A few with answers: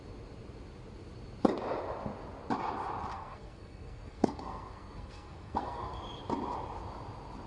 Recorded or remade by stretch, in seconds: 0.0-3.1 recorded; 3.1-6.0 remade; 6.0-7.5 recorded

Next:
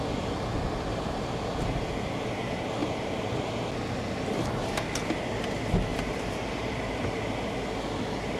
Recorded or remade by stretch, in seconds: 0.0-2.8 recorded; 2.8-3.5 remade; 3.5-5.9 recorded; 5.9-7.5 remade; 7.5-8.4 recorded

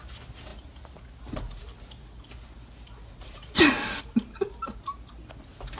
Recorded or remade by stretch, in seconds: 0.0-5.8 recorded

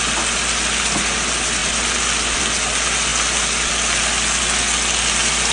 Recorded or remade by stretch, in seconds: 0.0-5.5 recorded

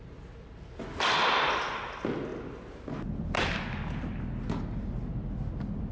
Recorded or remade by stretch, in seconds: 0.0-5.9 recorded

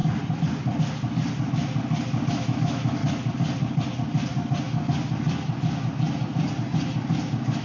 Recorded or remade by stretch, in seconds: 0.0-2.3 recorded; 2.3-3.0 remade; 3.0-7.6 recorded

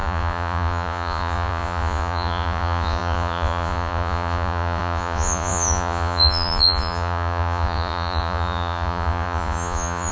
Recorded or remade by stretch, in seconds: 0.0-10.1 remade